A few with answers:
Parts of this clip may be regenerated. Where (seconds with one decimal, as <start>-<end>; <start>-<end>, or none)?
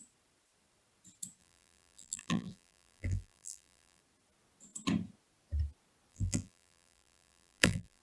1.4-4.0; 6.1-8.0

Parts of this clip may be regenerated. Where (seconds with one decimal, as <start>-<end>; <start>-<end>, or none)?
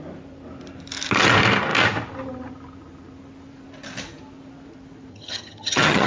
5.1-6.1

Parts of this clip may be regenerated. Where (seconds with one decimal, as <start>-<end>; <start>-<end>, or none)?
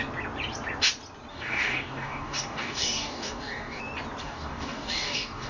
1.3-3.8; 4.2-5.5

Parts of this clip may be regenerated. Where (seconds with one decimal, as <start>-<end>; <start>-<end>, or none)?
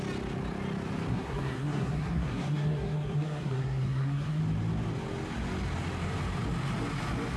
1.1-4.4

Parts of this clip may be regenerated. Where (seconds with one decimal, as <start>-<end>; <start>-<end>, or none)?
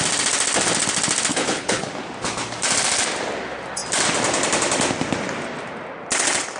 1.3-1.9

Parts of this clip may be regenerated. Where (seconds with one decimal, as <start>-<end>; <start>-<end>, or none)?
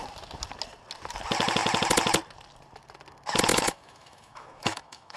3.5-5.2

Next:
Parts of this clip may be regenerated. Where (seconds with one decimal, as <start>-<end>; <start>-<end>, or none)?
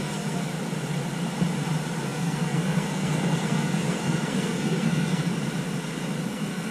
0.0-0.5; 2.0-5.3; 6.3-6.7